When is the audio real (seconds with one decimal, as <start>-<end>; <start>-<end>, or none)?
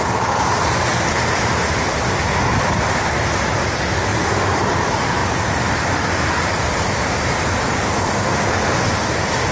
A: 0.0-4.1; 4.6-5.2; 8.8-9.5